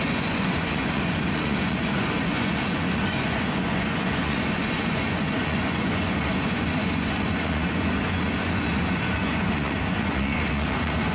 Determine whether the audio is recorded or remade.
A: remade